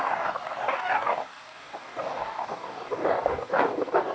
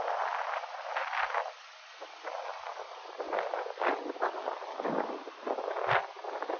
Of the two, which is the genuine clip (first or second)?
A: second